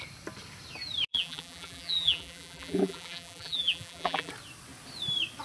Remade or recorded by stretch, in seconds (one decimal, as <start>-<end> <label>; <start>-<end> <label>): 0.0-1.1 recorded; 1.1-4.3 remade; 4.3-5.4 recorded